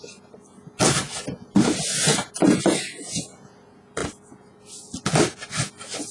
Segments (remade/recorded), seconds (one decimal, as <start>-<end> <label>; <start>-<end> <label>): 0.0-6.1 recorded